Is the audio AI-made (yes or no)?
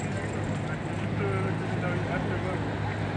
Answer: no